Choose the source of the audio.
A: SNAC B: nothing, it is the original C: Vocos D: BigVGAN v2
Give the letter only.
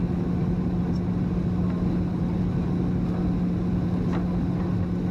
B